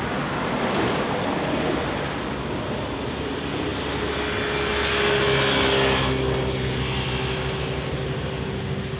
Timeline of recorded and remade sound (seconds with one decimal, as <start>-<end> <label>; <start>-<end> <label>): 0.0-9.0 recorded